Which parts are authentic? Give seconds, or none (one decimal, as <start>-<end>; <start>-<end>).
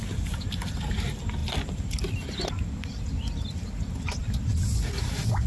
0.0-5.5